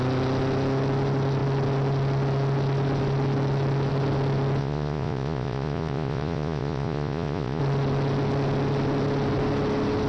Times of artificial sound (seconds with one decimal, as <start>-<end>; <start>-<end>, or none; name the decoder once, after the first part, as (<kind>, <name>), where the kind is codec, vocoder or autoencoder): 4.6-7.6 (vocoder, Vocos)